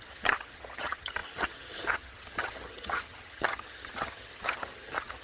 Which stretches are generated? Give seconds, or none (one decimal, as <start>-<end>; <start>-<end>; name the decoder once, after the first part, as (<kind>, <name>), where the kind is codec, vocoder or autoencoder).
0.0-5.2 (vocoder, HiFi-GAN)